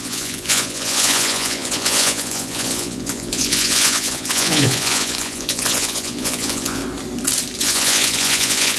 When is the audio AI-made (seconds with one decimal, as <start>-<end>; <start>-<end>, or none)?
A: 0.0-6.8; 7.6-8.8